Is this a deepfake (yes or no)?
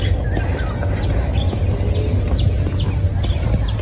no